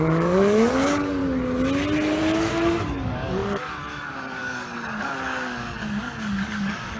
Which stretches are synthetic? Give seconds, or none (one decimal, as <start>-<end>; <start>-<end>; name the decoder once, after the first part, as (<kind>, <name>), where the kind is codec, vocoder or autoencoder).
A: 0.0-1.2 (codec, DAC); 2.2-7.0